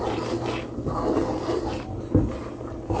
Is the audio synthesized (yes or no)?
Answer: no